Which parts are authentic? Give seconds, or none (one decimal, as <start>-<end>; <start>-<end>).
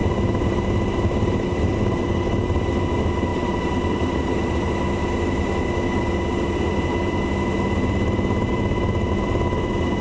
2.7-3.3; 4.6-10.0